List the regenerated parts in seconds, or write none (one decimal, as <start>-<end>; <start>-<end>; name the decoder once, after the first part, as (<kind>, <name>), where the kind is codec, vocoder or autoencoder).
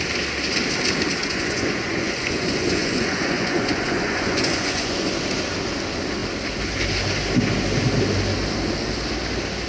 1.2-5.1 (vocoder, Vocos)